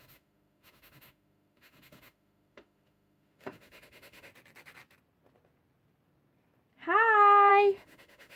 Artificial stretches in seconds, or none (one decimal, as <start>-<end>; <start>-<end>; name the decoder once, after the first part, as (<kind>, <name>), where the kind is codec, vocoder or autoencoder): 0.0-4.3 (autoencoder, DAC-VAE); 7.5-8.4